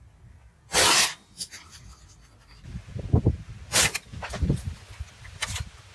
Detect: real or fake real